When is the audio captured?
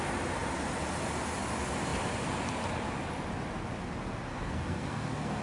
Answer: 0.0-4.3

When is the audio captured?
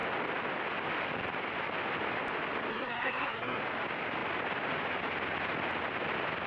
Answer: 0.0-2.7; 3.6-6.5